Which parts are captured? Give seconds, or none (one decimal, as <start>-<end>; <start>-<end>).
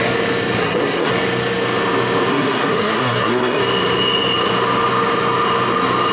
0.0-0.6; 1.1-2.3; 3.6-6.1